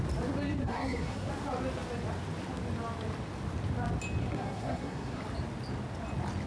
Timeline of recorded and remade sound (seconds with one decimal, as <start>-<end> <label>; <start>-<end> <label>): 0.0-0.6 recorded; 0.6-1.3 remade; 1.3-4.2 recorded; 4.2-5.2 remade; 5.2-6.5 recorded